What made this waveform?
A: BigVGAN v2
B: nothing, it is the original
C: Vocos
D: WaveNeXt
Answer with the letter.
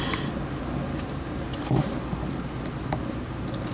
B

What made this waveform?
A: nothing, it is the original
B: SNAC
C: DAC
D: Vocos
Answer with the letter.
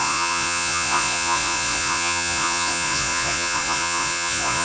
D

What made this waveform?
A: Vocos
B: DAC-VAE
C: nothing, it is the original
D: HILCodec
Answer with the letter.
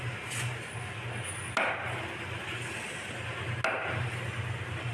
C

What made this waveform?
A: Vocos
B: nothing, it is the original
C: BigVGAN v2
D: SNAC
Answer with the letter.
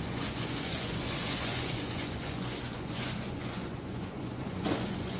A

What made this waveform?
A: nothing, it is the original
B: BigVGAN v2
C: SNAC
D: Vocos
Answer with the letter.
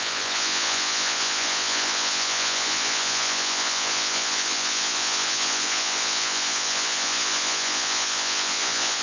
D